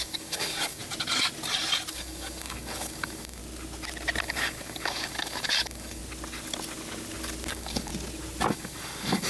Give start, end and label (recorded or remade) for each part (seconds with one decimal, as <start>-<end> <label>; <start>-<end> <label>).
0.0-0.8 remade; 0.8-1.9 recorded; 1.9-3.4 remade; 3.4-4.2 recorded; 4.2-6.0 remade; 6.0-7.5 recorded; 7.5-7.9 remade; 7.9-8.5 recorded; 8.5-9.3 remade